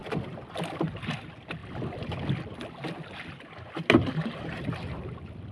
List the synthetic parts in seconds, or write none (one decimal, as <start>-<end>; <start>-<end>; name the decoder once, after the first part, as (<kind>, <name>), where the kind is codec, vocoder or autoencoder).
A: none